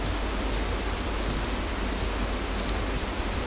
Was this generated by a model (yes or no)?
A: no